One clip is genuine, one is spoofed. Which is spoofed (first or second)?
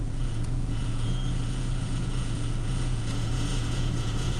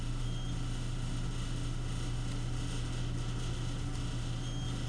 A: first